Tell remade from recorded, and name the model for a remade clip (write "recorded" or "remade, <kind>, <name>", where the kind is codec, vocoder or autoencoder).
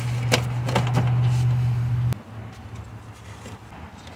recorded